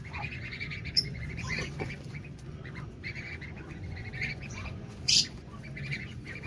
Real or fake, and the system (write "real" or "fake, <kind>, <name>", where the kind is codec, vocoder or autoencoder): fake, vocoder, Vocos